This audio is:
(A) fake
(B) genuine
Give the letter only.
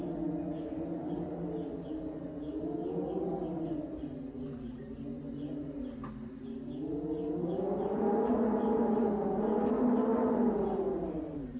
B